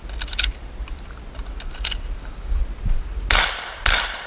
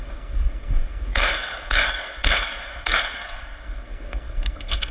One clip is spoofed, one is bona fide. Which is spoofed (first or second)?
second